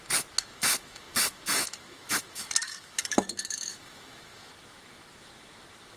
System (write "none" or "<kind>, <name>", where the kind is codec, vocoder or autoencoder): autoencoder, DAC-VAE